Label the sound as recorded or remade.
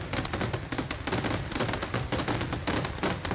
recorded